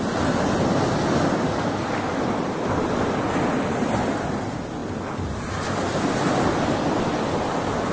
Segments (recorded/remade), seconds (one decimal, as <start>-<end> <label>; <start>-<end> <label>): 0.0-7.9 recorded

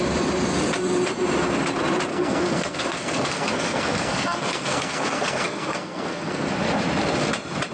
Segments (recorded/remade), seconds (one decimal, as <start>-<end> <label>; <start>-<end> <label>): 0.0-2.1 recorded; 2.1-6.5 remade; 6.5-7.7 recorded

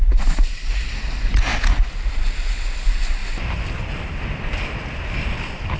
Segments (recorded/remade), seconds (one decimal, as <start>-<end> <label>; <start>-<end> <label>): 0.0-3.2 recorded; 3.2-3.9 remade; 3.9-5.8 recorded